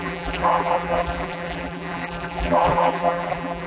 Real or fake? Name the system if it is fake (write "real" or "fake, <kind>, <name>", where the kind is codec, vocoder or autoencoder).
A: fake, vocoder, BigVGAN v2